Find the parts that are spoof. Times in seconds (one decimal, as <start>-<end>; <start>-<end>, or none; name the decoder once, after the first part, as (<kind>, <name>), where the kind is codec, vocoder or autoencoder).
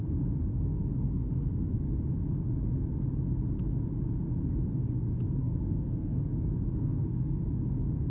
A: 0.5-1.9 (codec, SNAC); 5.4-6.2; 6.7-7.4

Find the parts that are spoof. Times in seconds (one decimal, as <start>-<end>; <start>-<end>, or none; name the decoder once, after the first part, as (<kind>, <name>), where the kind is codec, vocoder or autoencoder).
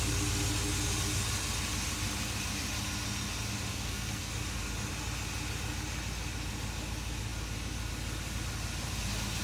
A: 3.7-4.3 (codec, SNAC)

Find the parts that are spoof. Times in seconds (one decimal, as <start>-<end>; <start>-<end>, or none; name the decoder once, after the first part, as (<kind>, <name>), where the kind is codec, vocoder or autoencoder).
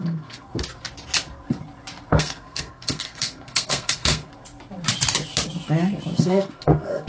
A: 0.0-0.5 (codec, SNAC); 2.1-4.3; 6.2-7.1